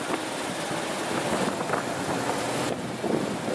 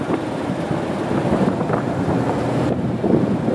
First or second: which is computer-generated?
second